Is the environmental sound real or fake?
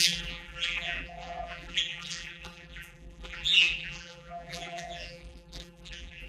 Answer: fake